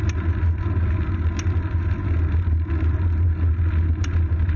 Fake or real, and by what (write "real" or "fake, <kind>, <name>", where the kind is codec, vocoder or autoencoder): real